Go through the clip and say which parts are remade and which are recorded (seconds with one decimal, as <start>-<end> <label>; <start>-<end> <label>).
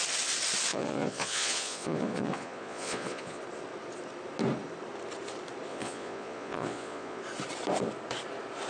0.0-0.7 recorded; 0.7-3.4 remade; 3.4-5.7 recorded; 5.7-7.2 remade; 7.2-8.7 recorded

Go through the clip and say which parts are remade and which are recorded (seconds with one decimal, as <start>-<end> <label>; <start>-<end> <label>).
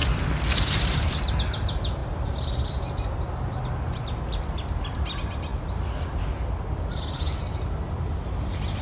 0.0-1.3 remade; 1.3-5.5 recorded; 5.5-6.2 remade; 6.2-8.8 recorded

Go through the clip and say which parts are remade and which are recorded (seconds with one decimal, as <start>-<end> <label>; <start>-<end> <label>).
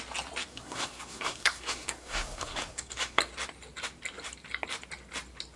0.0-0.5 recorded; 0.5-3.2 remade; 3.2-5.6 recorded